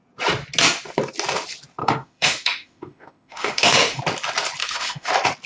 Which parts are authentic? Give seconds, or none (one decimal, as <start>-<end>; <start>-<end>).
0.0-1.8; 4.0-4.6; 5.1-5.5